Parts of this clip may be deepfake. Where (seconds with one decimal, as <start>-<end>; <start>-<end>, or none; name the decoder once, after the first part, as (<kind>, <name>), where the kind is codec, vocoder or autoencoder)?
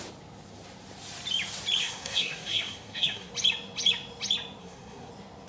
1.8-3.3 (codec, SNAC); 4.6-5.1